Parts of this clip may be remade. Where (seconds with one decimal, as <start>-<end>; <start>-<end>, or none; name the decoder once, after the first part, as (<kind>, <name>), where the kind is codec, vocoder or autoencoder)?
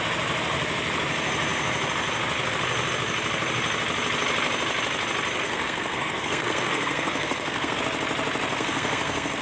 5.4-7.8 (codec, SNAC); 8.5-9.4